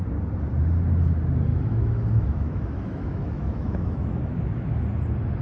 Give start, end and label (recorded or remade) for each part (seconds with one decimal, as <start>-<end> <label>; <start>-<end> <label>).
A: 0.0-1.5 recorded; 1.5-4.7 remade; 4.7-5.4 recorded